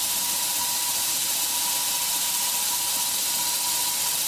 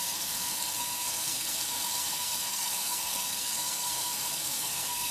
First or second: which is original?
first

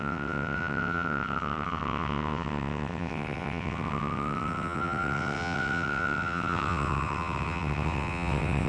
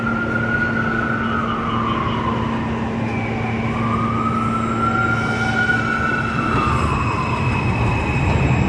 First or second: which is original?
second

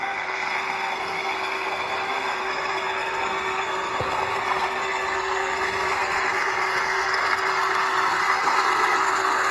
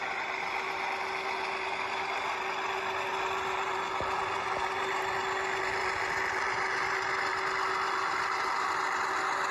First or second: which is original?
second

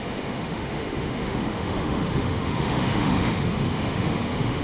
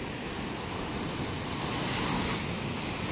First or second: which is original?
second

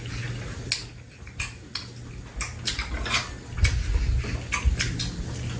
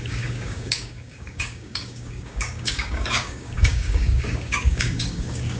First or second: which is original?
first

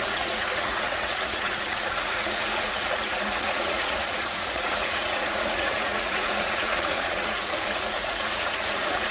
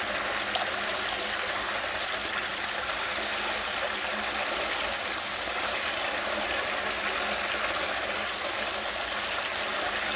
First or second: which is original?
second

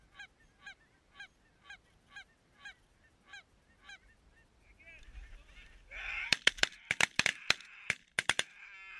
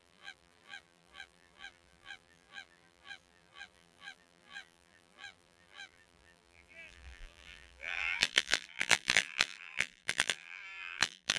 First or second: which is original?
first